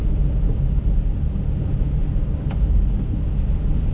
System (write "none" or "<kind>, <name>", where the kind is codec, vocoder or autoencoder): none